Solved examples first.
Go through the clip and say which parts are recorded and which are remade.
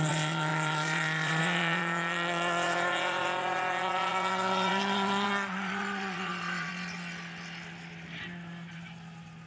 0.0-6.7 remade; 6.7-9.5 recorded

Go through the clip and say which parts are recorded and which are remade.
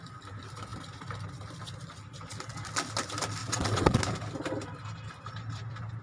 0.0-3.4 recorded; 3.4-4.0 remade; 4.0-6.0 recorded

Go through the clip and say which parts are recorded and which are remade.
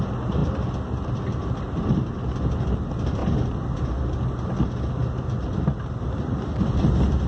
0.0-7.3 recorded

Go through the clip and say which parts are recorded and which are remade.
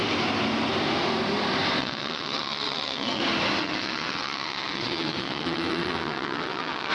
0.0-1.8 recorded; 1.8-3.2 remade; 3.2-3.6 recorded; 3.6-6.9 remade